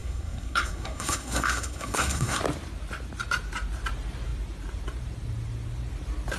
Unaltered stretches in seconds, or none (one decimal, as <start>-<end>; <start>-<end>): 2.4-6.4